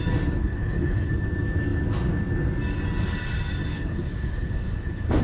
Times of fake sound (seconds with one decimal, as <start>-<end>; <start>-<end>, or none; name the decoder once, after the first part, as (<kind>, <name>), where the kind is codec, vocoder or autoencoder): 0.4-1.1 (codec, HILCodec); 3.7-5.2